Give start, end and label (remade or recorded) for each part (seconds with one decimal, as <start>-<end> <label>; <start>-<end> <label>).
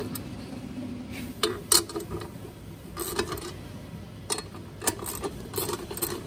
0.0-1.4 remade; 1.4-5.2 recorded; 5.2-6.3 remade